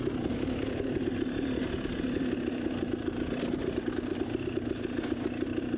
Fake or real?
real